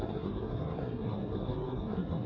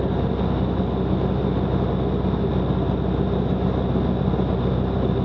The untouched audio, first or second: second